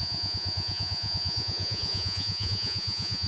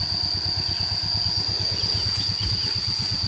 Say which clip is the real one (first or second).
second